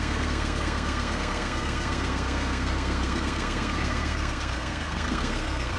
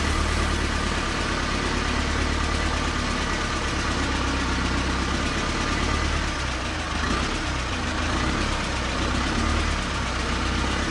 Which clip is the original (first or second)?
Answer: second